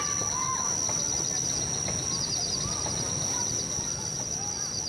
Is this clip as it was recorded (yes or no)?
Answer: yes